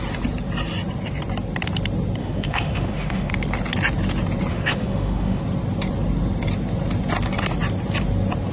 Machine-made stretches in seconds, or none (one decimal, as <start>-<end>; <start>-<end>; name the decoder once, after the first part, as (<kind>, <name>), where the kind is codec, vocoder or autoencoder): 2.2-3.3 (autoencoder, DAC-VAE); 4.5-5.4